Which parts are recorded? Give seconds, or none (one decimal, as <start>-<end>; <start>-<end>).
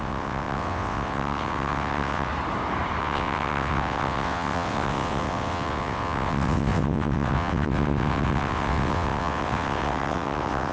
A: 2.3-3.0